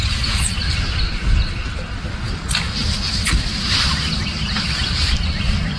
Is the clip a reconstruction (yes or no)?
yes